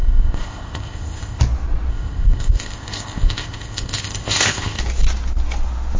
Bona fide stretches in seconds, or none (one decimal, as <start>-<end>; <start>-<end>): 1.4-1.9; 4.8-6.0